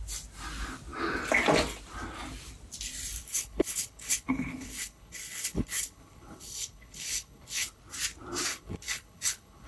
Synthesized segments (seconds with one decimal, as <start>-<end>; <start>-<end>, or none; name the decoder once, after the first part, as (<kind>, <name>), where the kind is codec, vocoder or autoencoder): 3.2-7.8 (codec, HILCodec); 8.5-9.7